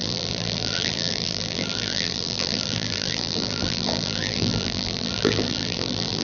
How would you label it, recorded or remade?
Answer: remade